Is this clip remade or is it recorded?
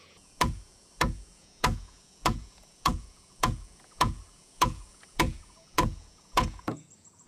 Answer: remade